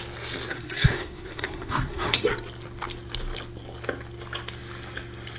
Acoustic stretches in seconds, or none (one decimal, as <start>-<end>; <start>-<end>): 0.0-0.5; 2.3-5.4